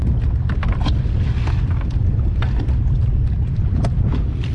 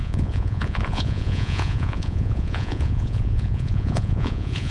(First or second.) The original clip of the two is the first